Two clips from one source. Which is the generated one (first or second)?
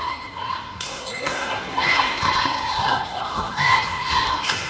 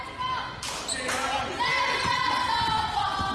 first